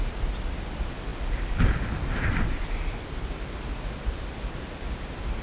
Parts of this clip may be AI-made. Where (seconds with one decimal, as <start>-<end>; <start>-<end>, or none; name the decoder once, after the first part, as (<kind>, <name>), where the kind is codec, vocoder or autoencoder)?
none